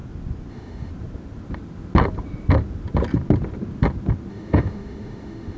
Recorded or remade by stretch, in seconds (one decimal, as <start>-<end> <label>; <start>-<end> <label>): 0.0-0.5 recorded; 0.5-0.9 remade; 0.9-4.3 recorded; 4.3-5.6 remade

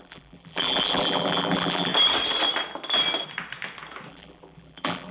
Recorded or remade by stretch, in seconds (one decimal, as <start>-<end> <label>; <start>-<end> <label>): 0.0-1.9 remade; 1.9-4.1 recorded; 4.1-5.1 remade

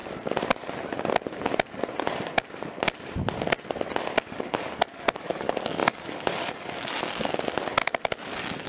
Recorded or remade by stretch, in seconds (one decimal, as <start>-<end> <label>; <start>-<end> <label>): 0.0-4.2 recorded; 4.2-7.3 remade; 7.3-8.2 recorded; 8.2-8.7 remade

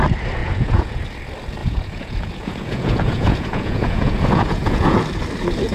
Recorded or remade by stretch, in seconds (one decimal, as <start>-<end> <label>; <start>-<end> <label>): 0.0-0.4 recorded; 0.4-1.0 remade; 1.0-1.6 recorded; 1.6-5.0 remade; 5.0-5.7 recorded